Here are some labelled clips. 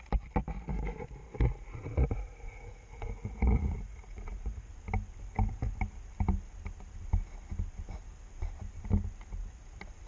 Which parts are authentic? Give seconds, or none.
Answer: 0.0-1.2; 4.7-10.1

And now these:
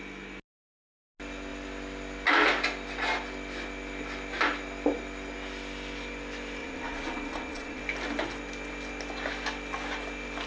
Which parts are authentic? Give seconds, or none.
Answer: 0.0-6.6; 7.8-10.5

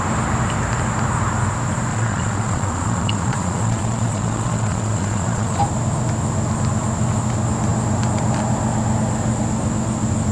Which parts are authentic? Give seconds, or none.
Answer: 0.0-1.9; 5.6-10.3

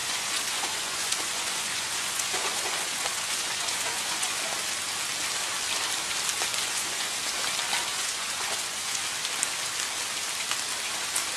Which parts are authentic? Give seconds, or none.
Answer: 4.4-6.5; 7.2-7.9; 9.0-11.4

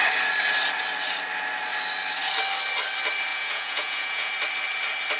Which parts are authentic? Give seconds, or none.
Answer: 0.0-3.3; 4.3-5.2